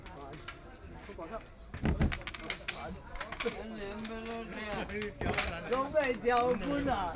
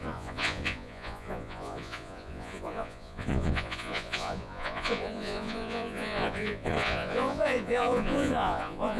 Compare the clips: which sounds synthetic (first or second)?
second